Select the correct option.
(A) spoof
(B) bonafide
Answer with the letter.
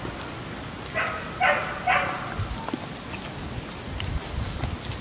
B